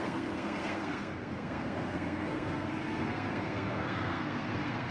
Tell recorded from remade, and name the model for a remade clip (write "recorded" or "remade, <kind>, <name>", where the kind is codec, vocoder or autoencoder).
remade, codec, SNAC